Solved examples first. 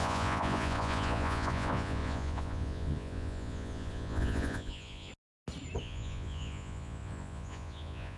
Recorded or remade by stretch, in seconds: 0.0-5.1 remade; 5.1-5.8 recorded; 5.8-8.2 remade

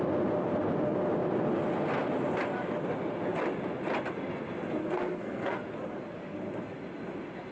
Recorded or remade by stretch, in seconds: 0.0-4.8 recorded; 4.8-5.6 remade; 5.6-7.5 recorded

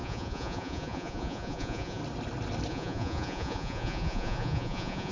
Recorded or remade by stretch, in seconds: 0.0-2.0 remade; 2.0-2.7 recorded; 2.7-5.1 remade

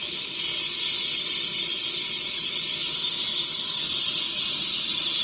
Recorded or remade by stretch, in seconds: 0.0-5.2 recorded

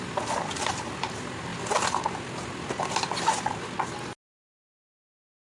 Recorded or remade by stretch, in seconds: 0.0-5.5 recorded